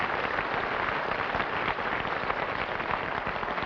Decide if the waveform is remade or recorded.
recorded